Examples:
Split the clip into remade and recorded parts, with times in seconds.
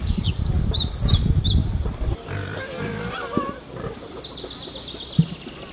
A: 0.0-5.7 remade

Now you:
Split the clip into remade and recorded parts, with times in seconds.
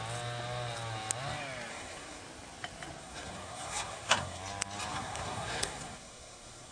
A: 0.0-1.7 recorded; 1.7-2.2 remade; 2.2-3.0 recorded; 3.0-4.4 remade; 4.4-4.9 recorded; 4.9-6.7 remade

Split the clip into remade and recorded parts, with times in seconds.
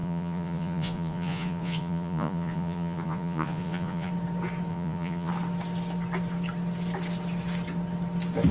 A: 0.0-4.1 remade; 4.1-4.7 recorded; 4.7-5.3 remade; 5.3-8.5 recorded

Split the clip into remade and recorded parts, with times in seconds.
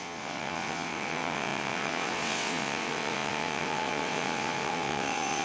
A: 0.0-5.4 remade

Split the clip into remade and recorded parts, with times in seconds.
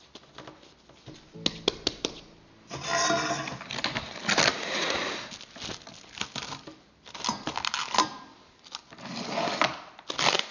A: 0.0-4.5 recorded; 4.5-5.1 remade; 5.1-10.5 recorded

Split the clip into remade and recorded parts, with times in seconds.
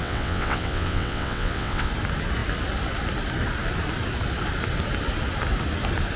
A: 0.0-1.9 remade; 1.9-6.2 recorded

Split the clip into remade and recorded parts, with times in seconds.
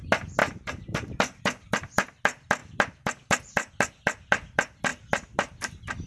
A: 0.0-0.4 recorded; 0.4-1.4 remade; 1.4-6.1 recorded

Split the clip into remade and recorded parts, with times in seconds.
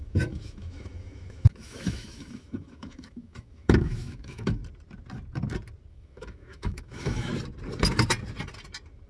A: 0.0-4.6 remade; 4.6-5.9 recorded; 5.9-7.3 remade; 7.3-9.1 recorded